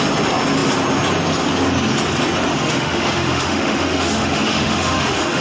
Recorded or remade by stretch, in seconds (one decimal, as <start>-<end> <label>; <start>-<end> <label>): 0.0-2.5 recorded; 2.5-5.4 remade